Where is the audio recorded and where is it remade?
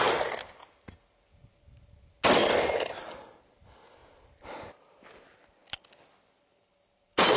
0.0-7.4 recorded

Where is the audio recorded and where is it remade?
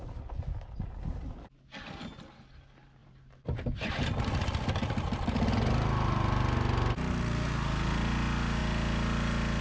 0.0-3.0 recorded; 3.0-3.9 remade; 3.9-9.6 recorded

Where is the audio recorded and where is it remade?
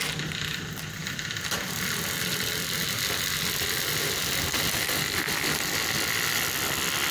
0.0-7.1 recorded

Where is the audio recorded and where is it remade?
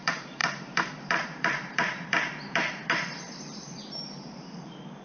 0.0-5.0 remade